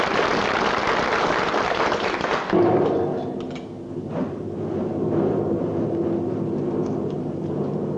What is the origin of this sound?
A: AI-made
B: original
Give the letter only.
B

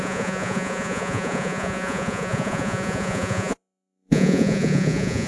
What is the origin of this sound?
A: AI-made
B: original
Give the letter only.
A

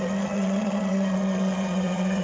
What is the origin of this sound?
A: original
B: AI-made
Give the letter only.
B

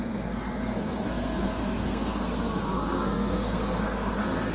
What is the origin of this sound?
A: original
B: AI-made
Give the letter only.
B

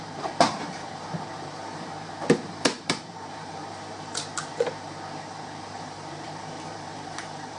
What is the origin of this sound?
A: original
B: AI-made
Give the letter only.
B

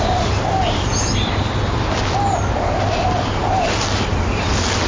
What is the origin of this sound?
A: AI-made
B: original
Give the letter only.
B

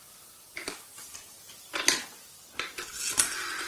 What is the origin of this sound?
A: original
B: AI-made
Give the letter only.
A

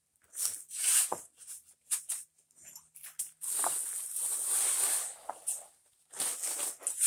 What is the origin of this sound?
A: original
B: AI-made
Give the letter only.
A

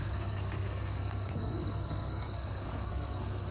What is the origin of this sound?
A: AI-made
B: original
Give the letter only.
A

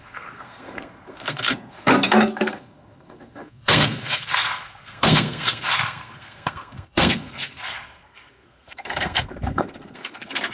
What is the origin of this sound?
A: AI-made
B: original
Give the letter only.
A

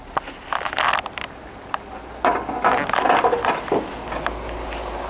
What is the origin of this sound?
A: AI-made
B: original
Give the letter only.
B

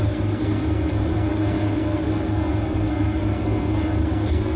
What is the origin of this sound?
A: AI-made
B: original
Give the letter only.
A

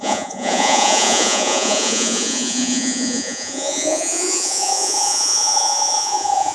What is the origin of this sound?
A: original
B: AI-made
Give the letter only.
B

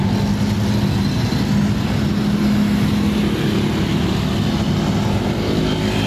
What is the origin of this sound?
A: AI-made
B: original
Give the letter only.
B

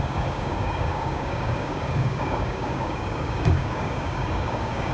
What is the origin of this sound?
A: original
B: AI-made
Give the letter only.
B